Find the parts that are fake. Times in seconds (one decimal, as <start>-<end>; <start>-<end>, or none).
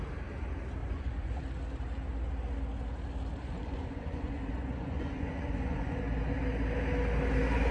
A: 0.8-1.4; 3.4-6.0